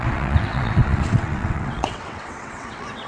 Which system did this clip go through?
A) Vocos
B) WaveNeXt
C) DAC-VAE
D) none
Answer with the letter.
B